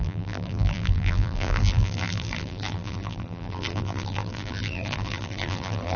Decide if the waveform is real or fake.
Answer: fake